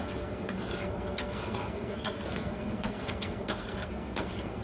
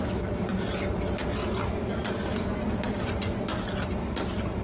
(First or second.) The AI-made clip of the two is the first